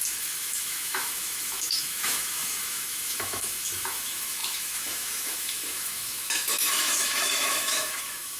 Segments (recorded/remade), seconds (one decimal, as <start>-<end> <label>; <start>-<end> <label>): 0.0-8.4 remade

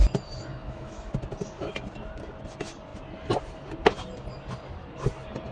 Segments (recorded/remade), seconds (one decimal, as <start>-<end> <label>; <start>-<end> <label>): 0.0-0.5 recorded; 0.5-1.1 remade; 1.1-5.5 recorded

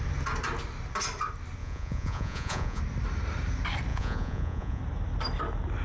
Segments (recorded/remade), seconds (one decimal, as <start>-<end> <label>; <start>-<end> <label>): 0.0-1.6 recorded; 1.6-2.8 remade; 2.8-3.9 recorded; 3.9-4.8 remade; 4.8-5.8 recorded

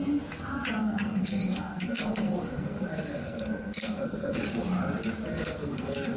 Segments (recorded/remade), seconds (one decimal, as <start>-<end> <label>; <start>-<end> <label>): 0.0-0.8 recorded; 0.8-4.4 remade; 4.4-5.3 recorded; 5.3-6.2 remade

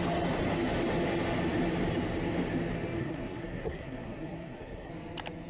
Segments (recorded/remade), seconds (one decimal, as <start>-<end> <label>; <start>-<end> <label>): 0.0-3.0 recorded; 3.0-4.9 remade; 4.9-5.5 recorded

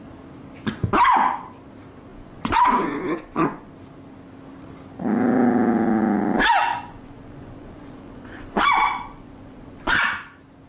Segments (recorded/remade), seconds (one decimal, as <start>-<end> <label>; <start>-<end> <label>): 0.0-2.1 recorded; 2.1-3.7 remade; 3.7-6.7 recorded; 6.7-10.0 remade; 10.0-10.7 recorded

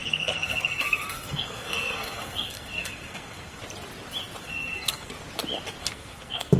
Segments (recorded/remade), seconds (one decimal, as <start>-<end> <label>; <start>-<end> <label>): 0.0-3.6 remade; 3.6-4.4 recorded; 4.4-5.1 remade; 5.1-5.8 recorded; 5.8-6.6 remade

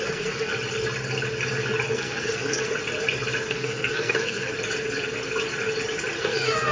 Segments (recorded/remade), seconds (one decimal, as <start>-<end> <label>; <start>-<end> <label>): 0.0-0.5 remade; 0.5-1.9 recorded; 1.9-2.7 remade; 2.7-3.5 recorded; 3.5-4.5 remade; 4.5-6.2 recorded; 6.2-6.7 remade